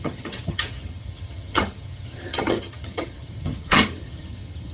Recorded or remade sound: remade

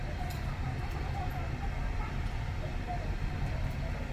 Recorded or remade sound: recorded